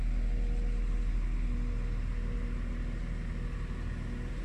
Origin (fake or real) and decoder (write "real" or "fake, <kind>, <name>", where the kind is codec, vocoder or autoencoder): real